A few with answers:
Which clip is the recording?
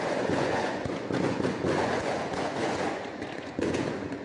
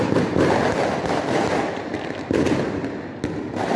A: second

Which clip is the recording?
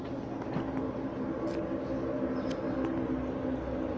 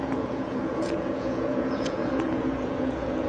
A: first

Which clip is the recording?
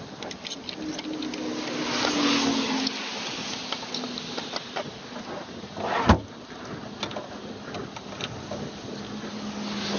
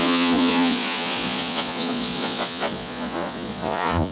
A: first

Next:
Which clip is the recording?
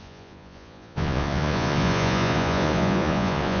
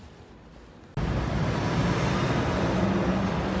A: second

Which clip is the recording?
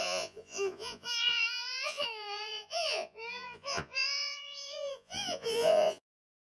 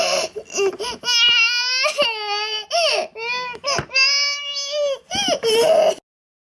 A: second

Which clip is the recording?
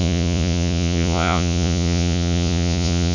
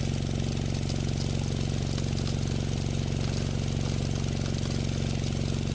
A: second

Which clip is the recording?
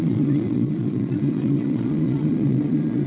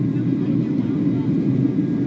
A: second